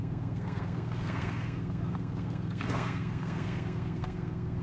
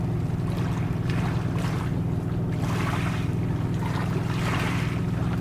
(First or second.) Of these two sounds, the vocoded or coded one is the first